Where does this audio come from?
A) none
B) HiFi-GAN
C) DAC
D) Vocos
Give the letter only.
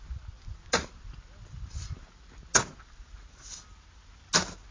A